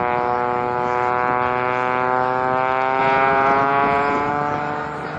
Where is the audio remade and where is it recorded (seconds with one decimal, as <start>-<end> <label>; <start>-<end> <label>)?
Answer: 0.0-3.0 recorded; 3.0-4.3 remade; 4.3-5.2 recorded